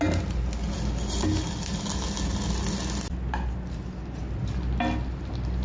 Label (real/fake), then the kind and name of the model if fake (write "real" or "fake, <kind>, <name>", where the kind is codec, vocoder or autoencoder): real